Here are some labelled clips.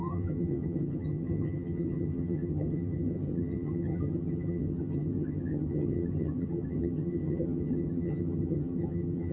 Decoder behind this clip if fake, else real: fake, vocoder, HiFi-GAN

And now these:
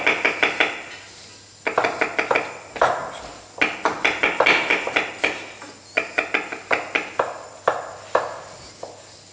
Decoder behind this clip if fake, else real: real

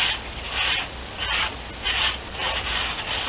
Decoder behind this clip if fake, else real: real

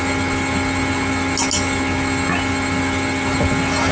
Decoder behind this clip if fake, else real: real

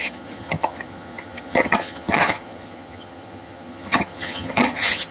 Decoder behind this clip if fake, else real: fake, vocoder, HiFi-GAN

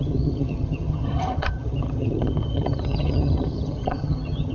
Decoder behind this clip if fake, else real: fake, vocoder, HiFi-GAN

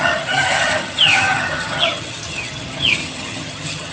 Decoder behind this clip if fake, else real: fake, vocoder, HiFi-GAN